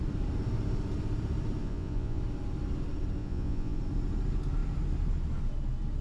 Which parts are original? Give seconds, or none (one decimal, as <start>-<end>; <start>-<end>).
0.0-1.6; 2.2-3.2; 3.8-6.0